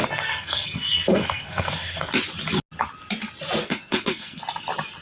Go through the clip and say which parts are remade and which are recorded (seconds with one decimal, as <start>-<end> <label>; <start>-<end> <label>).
0.0-2.1 remade; 2.1-3.6 recorded; 3.6-4.4 remade; 4.4-5.0 recorded